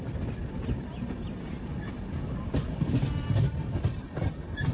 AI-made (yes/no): no